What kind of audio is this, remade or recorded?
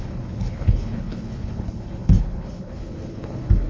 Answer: remade